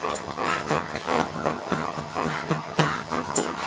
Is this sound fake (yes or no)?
yes